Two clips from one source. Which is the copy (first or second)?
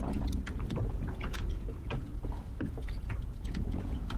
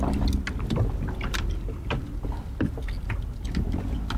first